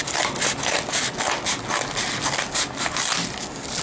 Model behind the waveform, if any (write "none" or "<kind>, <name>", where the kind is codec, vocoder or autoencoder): none